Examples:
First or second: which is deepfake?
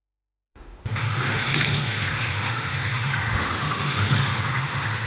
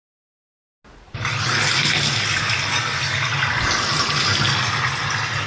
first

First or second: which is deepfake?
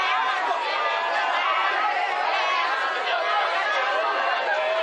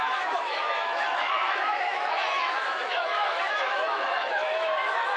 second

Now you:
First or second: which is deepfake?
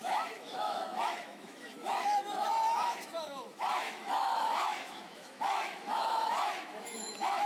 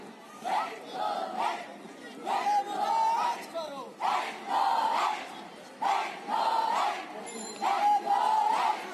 first